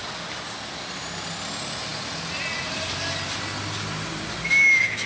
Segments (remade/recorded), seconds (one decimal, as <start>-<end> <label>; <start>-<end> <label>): 0.0-5.1 recorded